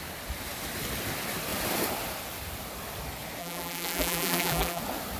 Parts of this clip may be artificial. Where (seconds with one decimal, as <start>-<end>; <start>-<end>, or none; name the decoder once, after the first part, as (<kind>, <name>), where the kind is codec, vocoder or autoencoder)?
3.4-4.8 (vocoder, BigVGAN v2)